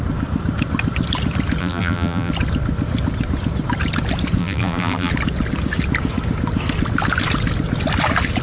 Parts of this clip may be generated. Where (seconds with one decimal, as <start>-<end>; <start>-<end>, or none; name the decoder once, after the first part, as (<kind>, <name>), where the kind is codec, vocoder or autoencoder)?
1.6-2.3 (vocoder, BigVGAN v2); 4.4-5.1